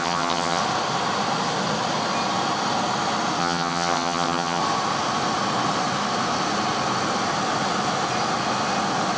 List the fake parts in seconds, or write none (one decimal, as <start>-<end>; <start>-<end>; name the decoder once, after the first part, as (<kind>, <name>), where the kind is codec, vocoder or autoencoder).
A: 0.0-0.6 (vocoder, HiFi-GAN); 3.4-4.6